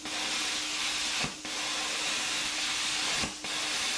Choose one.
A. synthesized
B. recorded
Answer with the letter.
B